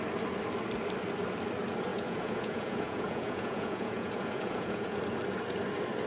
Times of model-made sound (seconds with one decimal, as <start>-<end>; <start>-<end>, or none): 1.9-5.0